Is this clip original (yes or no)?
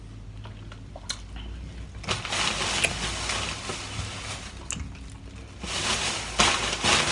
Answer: yes